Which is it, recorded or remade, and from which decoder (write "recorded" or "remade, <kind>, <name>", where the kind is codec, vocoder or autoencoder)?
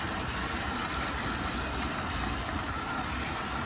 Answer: recorded